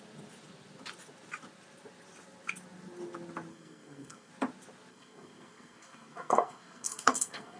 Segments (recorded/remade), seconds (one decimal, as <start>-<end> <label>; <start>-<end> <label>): 0.0-3.5 recorded; 3.5-4.3 remade; 4.3-4.9 recorded; 4.9-7.6 remade